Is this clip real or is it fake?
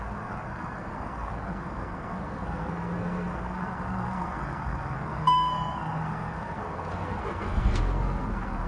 fake